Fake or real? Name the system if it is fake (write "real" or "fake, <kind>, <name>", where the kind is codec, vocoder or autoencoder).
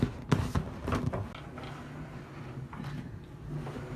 real